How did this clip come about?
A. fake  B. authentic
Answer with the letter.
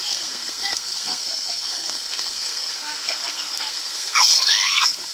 A